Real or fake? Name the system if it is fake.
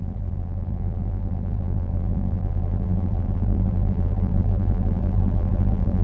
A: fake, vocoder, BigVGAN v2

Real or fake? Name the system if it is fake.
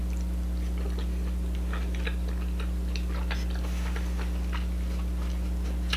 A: real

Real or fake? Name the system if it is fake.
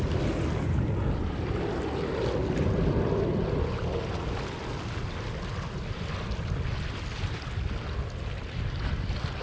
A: real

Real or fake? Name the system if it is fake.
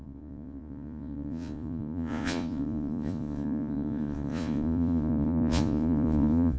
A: fake, vocoder, Vocos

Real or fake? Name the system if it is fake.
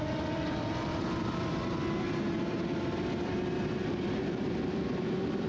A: fake, vocoder, BigVGAN v2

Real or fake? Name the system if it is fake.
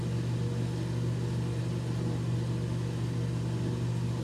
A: real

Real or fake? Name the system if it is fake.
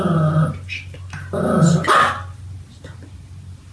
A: real